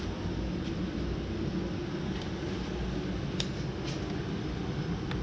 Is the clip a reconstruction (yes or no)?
no